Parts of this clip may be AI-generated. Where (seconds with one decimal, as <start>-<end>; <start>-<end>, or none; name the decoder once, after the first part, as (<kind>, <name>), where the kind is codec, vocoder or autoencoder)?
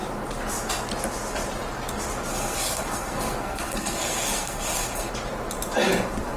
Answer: 2.3-5.1 (codec, SNAC)